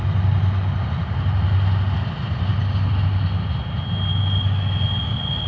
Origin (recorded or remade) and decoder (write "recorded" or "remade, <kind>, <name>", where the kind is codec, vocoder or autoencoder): recorded